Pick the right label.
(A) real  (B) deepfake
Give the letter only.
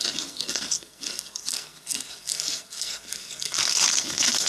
B